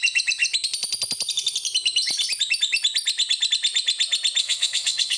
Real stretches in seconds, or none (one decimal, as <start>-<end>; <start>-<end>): 0.0-4.4